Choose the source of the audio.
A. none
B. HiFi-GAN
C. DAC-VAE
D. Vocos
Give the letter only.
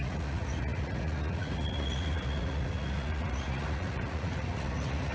D